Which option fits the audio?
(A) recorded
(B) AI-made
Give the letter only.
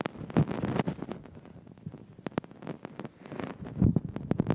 A